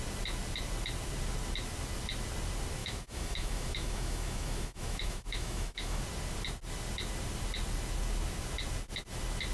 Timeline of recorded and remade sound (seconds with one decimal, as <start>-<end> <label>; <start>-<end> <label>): 0.0-2.8 recorded; 2.8-6.0 remade; 6.0-9.5 recorded